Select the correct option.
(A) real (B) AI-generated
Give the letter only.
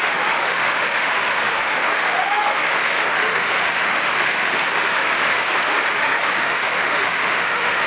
B